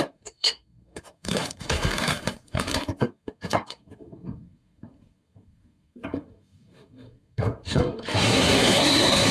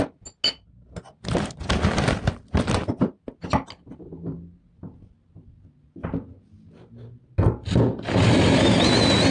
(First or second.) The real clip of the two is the second